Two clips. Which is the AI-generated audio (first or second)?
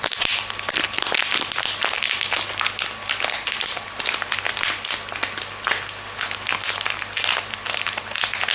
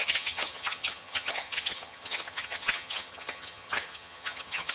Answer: second